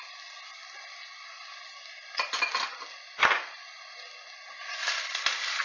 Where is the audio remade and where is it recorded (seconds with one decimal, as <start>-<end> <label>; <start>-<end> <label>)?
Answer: 0.0-5.6 recorded